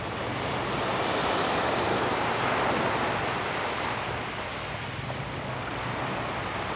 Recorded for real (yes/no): yes